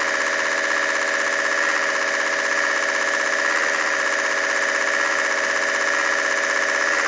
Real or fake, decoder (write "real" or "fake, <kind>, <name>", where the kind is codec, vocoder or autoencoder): real